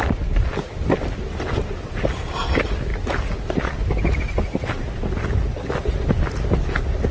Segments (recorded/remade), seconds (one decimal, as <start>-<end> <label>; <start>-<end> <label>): 0.0-7.1 recorded